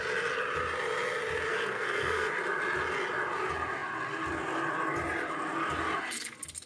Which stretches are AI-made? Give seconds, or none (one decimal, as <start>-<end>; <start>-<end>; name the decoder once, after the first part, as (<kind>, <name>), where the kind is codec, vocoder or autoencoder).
1.5-2.3 (codec, SNAC)